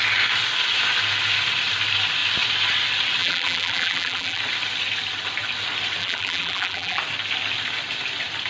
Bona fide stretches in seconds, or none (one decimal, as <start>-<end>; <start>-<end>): 0.0-3.2; 4.4-6.0; 7.0-8.5